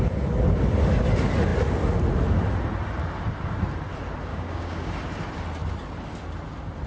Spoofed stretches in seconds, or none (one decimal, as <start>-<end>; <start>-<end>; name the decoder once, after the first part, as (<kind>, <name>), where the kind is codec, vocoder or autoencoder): 4.3-4.9 (codec, DAC)